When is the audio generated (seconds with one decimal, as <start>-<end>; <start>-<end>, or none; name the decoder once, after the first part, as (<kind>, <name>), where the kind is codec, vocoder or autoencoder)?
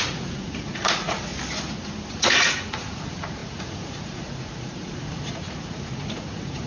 0.0-1.3 (vocoder, Vocos); 2.1-6.7